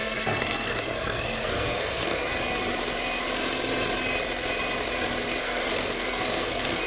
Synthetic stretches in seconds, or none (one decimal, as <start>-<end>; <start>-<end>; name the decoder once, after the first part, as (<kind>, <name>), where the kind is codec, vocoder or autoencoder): 0.0-2.2 (codec, SNAC); 5.4-6.9

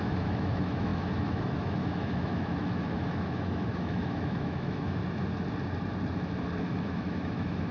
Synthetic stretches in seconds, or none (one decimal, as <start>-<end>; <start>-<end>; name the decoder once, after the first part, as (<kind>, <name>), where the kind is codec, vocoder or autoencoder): 0.0-5.0 (autoencoder, DAC-VAE); 6.6-7.7

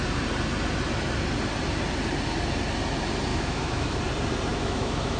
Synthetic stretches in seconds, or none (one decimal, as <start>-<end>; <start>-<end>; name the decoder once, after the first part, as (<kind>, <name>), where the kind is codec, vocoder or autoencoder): 3.3-4.0 (autoencoder, DAC-VAE); 4.5-5.2

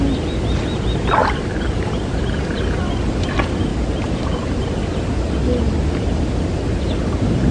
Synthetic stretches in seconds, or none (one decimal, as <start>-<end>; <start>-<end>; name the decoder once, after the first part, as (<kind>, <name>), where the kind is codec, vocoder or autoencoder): 1.2-2.4 (vocoder, BigVGAN v2); 3.7-4.6